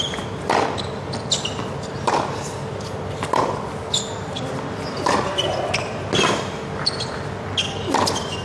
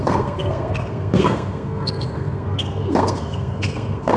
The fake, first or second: second